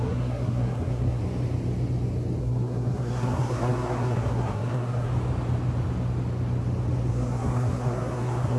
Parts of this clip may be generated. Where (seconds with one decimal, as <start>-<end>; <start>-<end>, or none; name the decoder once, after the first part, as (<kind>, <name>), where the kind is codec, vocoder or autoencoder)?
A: 0.0-1.2 (codec, SNAC); 2.4-5.1; 7.1-8.6